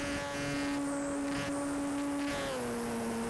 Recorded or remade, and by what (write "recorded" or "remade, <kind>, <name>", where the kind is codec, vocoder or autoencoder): recorded